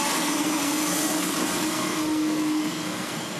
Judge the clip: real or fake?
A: fake